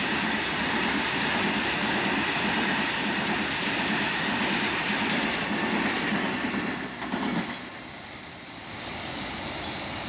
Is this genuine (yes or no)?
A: yes